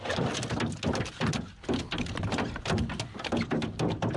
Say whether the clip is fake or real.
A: real